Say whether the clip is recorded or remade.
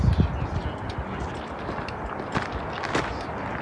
recorded